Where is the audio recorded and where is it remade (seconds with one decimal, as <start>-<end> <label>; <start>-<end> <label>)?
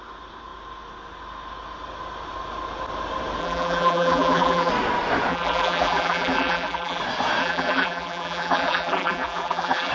0.0-3.4 recorded; 3.4-4.7 remade; 4.7-5.3 recorded; 5.3-7.0 remade; 7.0-7.4 recorded; 7.4-9.9 remade